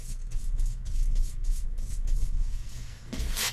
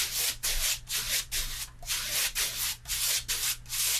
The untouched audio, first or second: second